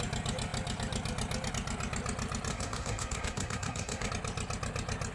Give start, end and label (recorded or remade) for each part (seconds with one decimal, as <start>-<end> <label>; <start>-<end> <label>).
0.0-2.5 recorded; 2.5-4.1 remade; 4.1-5.1 recorded